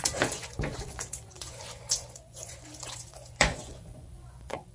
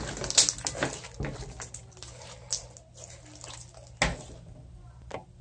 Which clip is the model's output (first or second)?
first